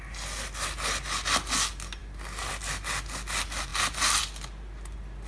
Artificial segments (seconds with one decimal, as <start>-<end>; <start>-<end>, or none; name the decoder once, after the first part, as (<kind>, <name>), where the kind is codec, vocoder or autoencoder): none